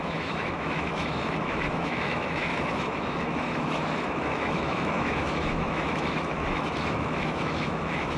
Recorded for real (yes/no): no